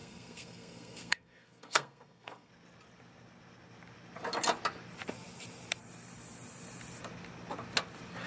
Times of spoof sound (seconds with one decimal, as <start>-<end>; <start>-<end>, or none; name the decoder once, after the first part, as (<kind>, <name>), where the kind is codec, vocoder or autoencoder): 0.0-2.5 (codec, SNAC)